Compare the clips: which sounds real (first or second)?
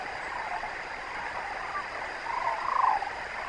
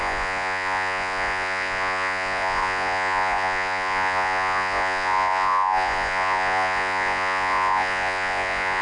first